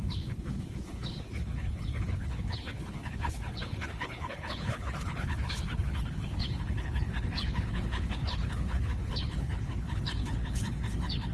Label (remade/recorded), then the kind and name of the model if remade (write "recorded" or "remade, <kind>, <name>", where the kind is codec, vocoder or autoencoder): remade, codec, HILCodec